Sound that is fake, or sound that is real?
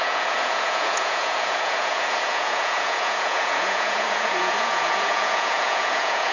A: fake